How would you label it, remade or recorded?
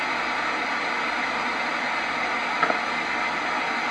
recorded